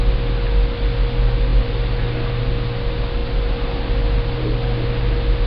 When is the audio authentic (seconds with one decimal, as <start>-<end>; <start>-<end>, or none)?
0.0-5.5